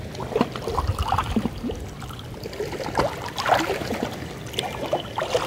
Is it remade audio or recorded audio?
recorded